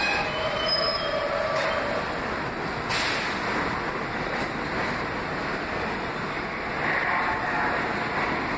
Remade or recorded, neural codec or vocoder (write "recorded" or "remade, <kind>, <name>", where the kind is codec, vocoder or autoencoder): recorded